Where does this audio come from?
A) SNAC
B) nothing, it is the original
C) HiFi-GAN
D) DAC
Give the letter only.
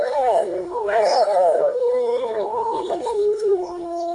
A